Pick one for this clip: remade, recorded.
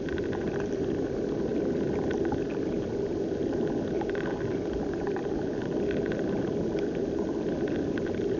recorded